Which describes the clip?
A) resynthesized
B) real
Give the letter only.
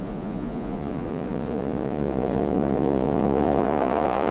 A